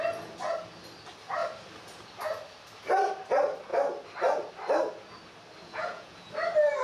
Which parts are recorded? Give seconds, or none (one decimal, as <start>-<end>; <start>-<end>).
0.0-5.6; 6.3-6.8